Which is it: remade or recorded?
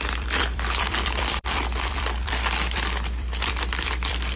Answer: remade